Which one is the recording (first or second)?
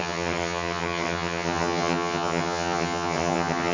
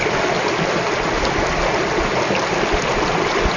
second